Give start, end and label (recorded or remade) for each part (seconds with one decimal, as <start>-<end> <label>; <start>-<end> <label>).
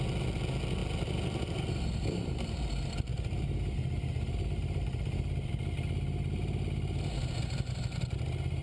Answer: 0.0-0.8 recorded; 0.8-2.7 remade; 2.7-3.1 recorded; 3.1-5.5 remade; 5.5-8.6 recorded